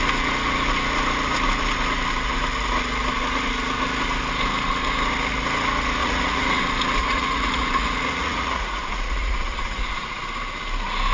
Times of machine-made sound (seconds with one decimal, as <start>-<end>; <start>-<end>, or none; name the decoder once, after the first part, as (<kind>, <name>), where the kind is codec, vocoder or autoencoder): 6.0-6.6 (vocoder, Vocos); 7.0-10.2

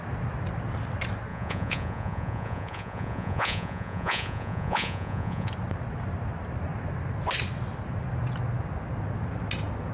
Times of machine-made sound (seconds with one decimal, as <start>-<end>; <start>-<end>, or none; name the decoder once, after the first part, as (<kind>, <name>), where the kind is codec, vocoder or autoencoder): 1.3-5.5 (vocoder, Vocos)